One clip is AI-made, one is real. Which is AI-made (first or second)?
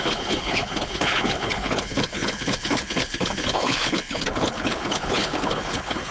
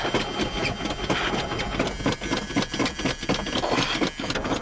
first